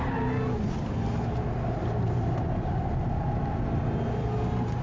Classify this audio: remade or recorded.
recorded